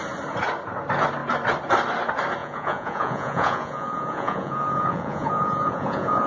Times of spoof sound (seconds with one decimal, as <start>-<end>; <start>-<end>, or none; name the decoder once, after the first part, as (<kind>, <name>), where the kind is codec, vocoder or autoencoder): 2.4-6.3 (vocoder, Vocos)